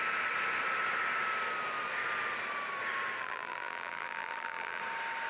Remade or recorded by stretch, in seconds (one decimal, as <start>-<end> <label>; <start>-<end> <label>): 0.0-3.2 recorded; 3.2-4.8 remade; 4.8-5.3 recorded